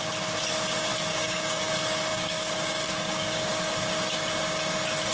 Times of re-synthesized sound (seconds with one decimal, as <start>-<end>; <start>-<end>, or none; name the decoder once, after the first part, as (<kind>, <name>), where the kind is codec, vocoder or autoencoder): 1.1-1.7 (codec, DAC); 2.1-3.5